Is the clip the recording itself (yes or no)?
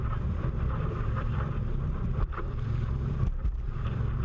no